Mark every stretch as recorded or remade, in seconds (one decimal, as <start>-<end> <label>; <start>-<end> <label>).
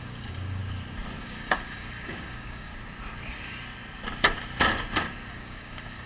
0.0-0.6 remade; 0.6-1.2 recorded; 1.2-2.7 remade; 2.7-5.3 recorded; 5.3-6.1 remade